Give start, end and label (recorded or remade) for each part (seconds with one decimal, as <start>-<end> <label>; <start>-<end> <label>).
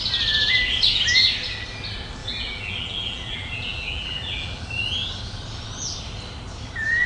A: 0.0-2.2 recorded; 2.2-4.6 remade; 4.6-7.1 recorded